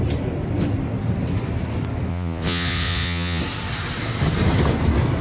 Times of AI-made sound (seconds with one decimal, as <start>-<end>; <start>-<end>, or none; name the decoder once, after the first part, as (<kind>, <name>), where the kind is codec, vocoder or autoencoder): 2.1-3.4 (vocoder, Vocos)